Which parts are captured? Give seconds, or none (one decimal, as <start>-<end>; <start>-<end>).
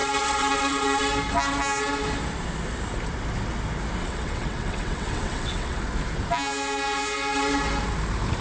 1.0-4.0; 5.8-8.4